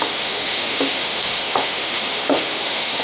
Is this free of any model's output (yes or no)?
no